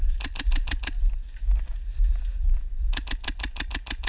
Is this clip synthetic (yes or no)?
no